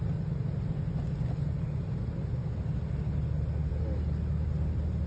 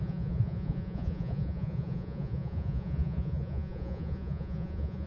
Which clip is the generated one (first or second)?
second